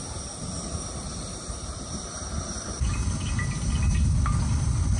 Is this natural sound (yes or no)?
no